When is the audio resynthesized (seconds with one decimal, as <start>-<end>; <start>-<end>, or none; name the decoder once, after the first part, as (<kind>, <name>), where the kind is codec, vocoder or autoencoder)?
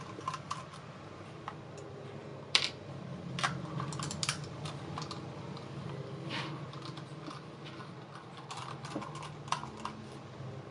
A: none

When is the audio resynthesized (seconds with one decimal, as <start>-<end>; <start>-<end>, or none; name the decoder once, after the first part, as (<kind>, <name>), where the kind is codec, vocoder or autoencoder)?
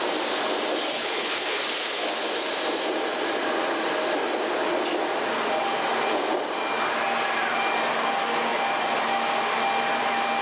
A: 0.9-1.6 (codec, HILCodec)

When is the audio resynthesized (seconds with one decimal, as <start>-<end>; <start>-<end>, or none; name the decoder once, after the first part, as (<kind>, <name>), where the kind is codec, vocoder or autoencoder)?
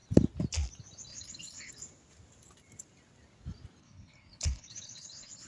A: 1.1-1.7 (codec, HILCodec); 3.8-5.5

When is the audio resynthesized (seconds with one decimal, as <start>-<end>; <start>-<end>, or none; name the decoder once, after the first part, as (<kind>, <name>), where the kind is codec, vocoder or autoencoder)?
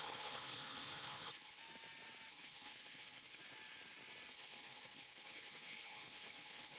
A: 0.0-1.6 (codec, HILCodec); 2.3-3.4; 4.3-6.8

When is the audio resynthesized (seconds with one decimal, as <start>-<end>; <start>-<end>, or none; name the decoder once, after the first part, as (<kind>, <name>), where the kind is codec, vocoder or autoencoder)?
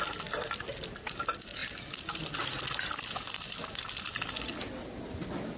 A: none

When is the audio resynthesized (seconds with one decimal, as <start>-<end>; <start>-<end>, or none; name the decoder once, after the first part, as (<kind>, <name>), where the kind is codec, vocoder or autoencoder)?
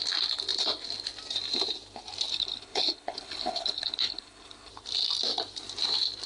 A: 2.3-4.7 (codec, HILCodec)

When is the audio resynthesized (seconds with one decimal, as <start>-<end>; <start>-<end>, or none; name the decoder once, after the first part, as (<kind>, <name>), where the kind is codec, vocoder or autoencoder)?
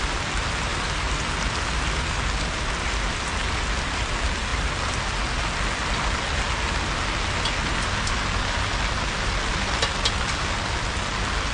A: none